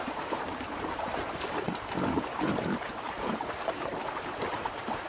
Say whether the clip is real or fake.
fake